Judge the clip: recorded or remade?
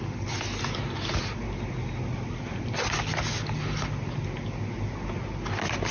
recorded